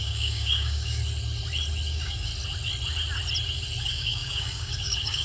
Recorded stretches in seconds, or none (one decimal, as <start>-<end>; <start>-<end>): 1.0-1.9; 2.3-3.8